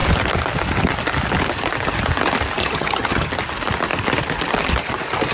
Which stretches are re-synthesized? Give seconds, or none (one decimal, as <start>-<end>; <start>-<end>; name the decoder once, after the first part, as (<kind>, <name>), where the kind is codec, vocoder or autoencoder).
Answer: 2.6-3.3 (vocoder, HiFi-GAN)